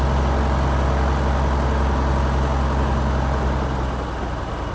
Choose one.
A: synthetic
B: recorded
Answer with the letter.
B